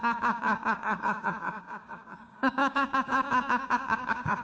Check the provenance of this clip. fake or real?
fake